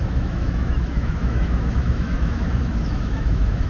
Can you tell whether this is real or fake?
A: fake